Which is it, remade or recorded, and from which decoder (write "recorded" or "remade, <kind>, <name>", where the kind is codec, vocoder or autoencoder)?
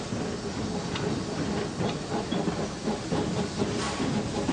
recorded